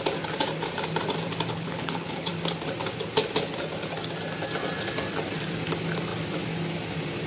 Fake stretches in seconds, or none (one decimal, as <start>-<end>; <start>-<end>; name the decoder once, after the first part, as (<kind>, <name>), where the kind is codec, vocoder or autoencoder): 1.5-2.3 (codec, HILCodec)